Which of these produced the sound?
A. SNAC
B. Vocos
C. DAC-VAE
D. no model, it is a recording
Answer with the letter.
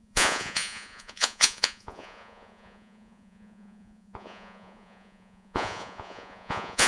B